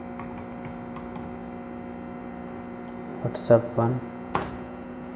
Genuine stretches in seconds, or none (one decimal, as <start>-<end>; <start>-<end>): 0.0-3.1